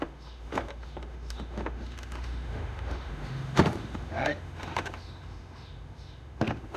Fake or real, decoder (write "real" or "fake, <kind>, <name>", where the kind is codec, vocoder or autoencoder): fake, autoencoder, DAC-VAE